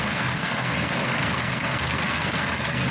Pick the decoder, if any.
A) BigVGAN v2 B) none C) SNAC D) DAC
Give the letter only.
C